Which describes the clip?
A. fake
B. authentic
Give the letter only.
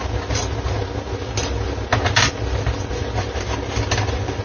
B